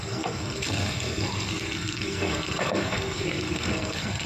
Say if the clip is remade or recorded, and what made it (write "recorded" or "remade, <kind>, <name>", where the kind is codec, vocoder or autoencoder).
remade, codec, SNAC